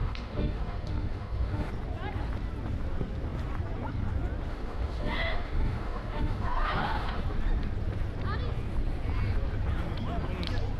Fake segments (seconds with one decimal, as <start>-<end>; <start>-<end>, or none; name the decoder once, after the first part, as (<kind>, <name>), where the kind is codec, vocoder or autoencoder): 0.0-1.7 (autoencoder, DAC-VAE); 4.5-7.2